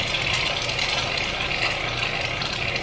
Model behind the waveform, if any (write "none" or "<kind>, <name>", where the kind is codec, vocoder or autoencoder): none